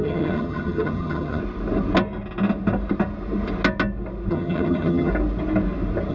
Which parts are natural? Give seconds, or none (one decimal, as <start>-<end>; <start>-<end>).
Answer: 1.4-4.3; 5.1-6.1